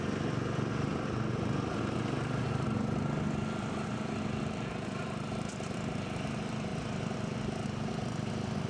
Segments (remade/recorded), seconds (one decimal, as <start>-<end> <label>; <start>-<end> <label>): 0.0-8.7 recorded